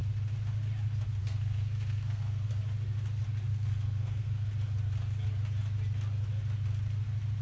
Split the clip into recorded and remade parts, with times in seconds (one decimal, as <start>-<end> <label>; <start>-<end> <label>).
0.0-1.2 recorded; 1.2-2.5 remade; 2.5-3.5 recorded; 3.5-4.5 remade; 4.5-7.4 recorded